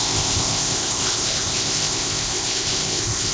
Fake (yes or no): yes